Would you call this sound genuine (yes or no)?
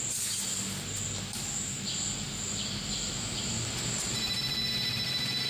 yes